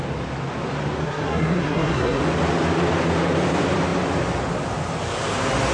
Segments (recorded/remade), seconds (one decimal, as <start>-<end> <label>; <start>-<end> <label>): 0.0-1.0 recorded; 1.0-2.2 remade; 2.2-5.7 recorded